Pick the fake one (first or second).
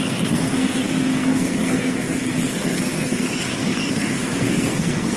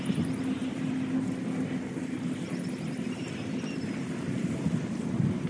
first